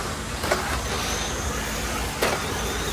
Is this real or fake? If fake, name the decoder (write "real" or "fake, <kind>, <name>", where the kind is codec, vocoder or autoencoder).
real